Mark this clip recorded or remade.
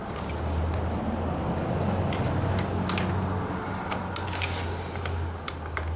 recorded